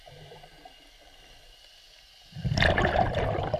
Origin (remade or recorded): recorded